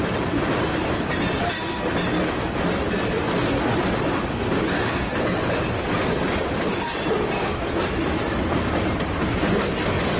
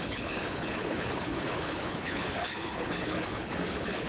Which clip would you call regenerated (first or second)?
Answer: second